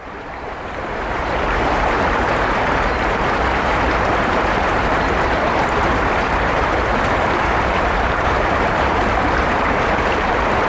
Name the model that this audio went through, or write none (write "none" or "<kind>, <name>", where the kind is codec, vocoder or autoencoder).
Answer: vocoder, BigVGAN v2